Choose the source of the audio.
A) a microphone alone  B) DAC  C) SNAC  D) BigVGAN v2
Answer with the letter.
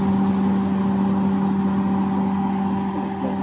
A